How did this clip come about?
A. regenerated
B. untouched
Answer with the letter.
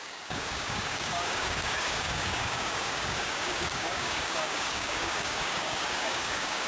A